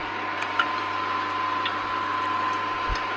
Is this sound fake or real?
real